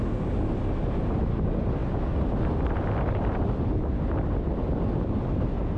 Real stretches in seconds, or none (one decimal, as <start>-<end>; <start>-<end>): 0.0-5.8